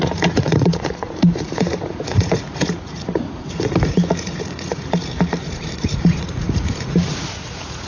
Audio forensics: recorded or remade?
remade